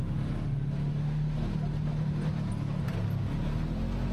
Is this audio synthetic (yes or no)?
no